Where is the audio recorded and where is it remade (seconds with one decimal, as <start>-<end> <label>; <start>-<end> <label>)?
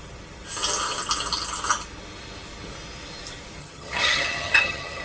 0.0-3.6 recorded; 3.6-5.0 remade